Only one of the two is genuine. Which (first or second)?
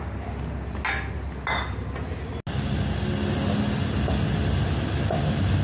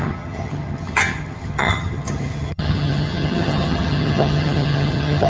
first